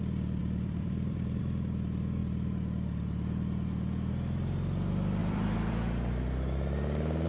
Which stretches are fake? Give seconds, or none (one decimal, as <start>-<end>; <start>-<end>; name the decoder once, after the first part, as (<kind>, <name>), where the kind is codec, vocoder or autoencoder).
0.4-1.4 (vocoder, BigVGAN v2); 5.2-5.7